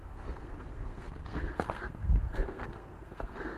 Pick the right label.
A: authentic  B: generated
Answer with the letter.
B